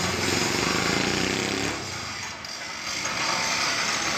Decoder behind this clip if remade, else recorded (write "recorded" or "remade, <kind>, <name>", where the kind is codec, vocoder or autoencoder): recorded